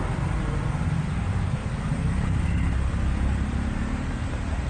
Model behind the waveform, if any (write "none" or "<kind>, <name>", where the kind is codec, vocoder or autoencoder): none